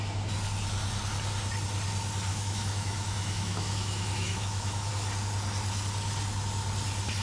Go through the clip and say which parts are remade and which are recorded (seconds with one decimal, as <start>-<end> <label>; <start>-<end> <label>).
0.0-2.3 recorded; 2.3-4.9 remade; 4.9-7.2 recorded